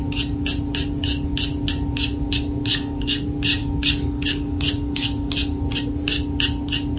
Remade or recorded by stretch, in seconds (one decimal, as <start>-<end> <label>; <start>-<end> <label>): 0.0-2.7 recorded; 2.7-3.2 remade; 3.2-3.6 recorded; 3.6-5.3 remade; 5.3-7.0 recorded